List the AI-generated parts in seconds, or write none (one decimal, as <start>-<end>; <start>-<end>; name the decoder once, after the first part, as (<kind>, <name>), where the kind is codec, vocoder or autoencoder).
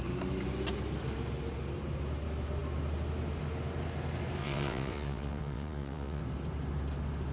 4.4-6.2 (vocoder, WaveNeXt)